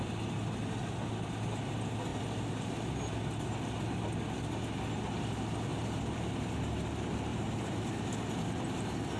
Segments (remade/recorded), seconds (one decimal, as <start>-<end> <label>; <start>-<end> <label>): 0.0-2.1 recorded; 2.1-2.8 remade; 2.8-5.7 recorded; 5.7-6.3 remade; 6.3-7.3 recorded; 7.3-7.9 remade; 7.9-9.2 recorded